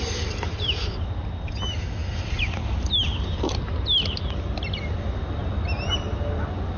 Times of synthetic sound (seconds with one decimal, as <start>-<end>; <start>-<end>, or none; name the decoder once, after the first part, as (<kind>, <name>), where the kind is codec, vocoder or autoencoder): none